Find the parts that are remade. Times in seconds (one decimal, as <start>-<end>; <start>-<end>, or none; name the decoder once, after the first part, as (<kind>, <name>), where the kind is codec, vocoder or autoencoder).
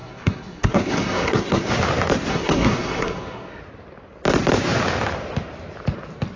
0.0-1.7 (codec, SNAC); 2.3-3.6